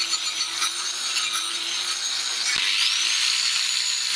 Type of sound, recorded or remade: recorded